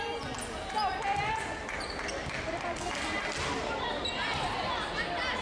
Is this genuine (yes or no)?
yes